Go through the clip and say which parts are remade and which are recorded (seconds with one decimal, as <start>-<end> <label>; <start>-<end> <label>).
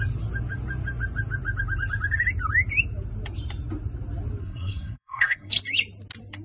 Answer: 0.0-4.4 recorded; 4.4-5.5 remade; 5.5-6.4 recorded